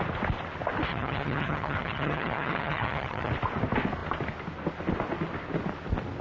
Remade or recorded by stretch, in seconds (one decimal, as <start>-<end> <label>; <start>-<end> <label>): 0.0-0.9 recorded; 0.9-3.3 remade; 3.3-6.2 recorded